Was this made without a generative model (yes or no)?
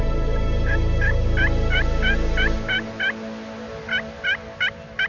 yes